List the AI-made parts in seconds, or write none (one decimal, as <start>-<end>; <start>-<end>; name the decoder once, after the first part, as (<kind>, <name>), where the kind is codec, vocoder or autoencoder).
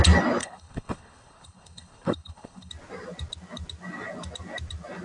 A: 0.4-2.7 (codec, HILCodec)